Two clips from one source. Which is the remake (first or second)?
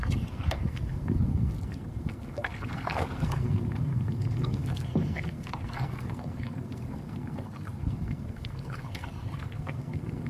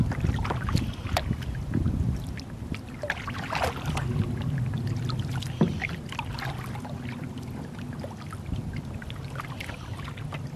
first